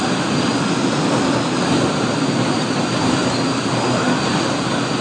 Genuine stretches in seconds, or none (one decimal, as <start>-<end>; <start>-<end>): 0.0-5.0